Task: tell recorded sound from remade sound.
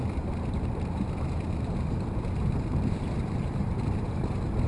remade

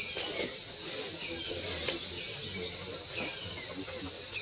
recorded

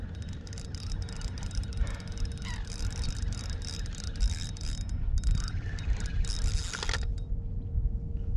recorded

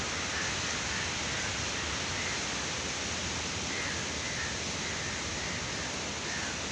recorded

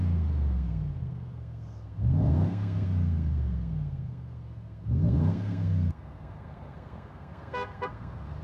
remade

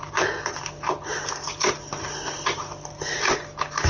recorded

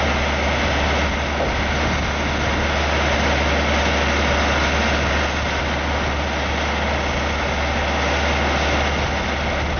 recorded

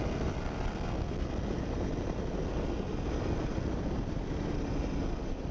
recorded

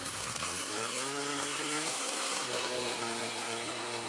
remade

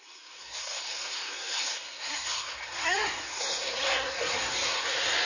remade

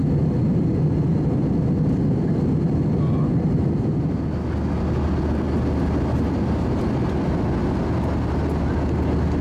recorded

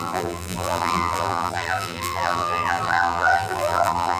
remade